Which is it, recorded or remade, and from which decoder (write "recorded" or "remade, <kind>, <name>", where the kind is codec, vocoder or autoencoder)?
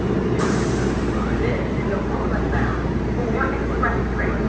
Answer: recorded